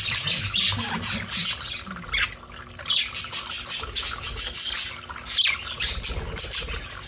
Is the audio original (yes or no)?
yes